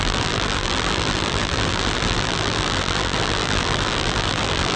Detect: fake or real fake